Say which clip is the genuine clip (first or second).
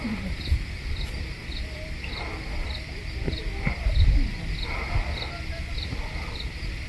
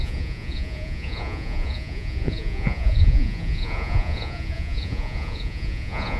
first